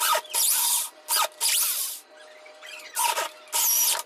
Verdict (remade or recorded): recorded